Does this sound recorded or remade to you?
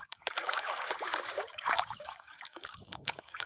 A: remade